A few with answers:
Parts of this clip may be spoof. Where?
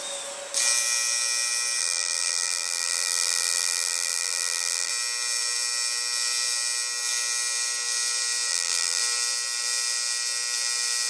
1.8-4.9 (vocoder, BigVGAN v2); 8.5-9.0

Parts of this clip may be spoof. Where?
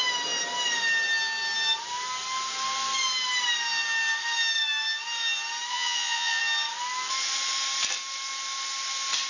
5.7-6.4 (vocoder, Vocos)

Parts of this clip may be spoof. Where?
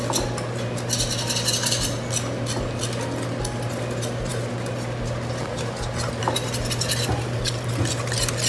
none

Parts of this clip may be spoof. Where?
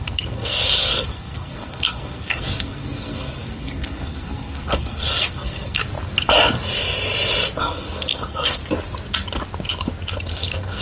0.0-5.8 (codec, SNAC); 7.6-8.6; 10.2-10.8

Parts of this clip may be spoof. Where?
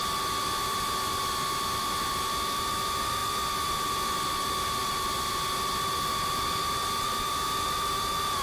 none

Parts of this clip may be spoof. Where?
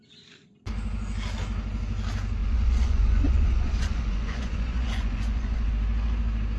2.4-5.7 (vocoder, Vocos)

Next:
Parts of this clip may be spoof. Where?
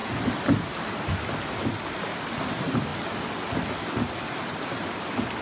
none